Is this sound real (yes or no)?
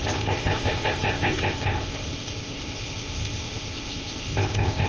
no